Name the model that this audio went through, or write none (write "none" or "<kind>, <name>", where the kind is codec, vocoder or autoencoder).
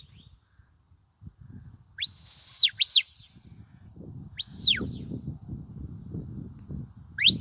none